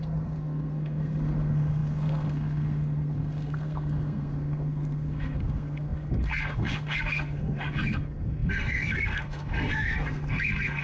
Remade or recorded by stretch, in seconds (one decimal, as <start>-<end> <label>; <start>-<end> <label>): 0.0-10.8 remade